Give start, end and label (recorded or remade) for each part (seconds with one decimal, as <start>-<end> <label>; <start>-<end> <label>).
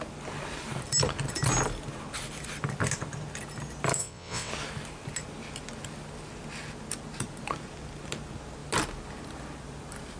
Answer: 0.0-4.0 recorded; 4.0-4.5 remade; 4.5-10.2 recorded